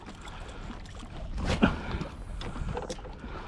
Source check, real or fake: real